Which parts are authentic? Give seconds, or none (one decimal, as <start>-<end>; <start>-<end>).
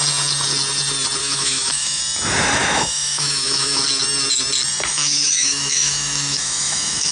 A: 0.0-1.2; 2.0-2.6; 3.8-4.9